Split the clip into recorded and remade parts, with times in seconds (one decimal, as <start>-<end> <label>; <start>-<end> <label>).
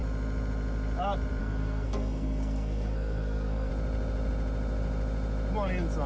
0.0-1.4 recorded; 1.4-3.7 remade; 3.7-6.1 recorded